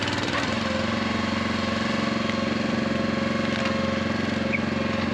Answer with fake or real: real